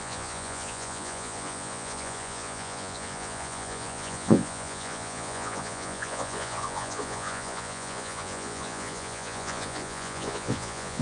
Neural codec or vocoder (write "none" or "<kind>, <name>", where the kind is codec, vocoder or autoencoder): vocoder, Vocos